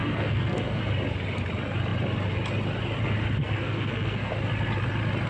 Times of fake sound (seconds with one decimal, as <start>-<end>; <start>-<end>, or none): 0.0-0.8; 3.4-4.3